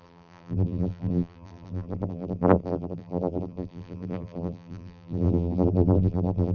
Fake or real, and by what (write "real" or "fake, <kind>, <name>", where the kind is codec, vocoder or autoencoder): fake, vocoder, BigVGAN v2